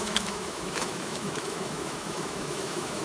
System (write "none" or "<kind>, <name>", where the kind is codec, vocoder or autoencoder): autoencoder, DAC-VAE